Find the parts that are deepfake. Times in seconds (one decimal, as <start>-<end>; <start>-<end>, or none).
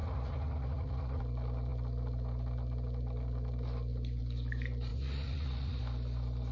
0.0-1.2; 4.9-5.8